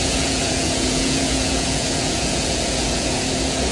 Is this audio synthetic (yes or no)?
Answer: yes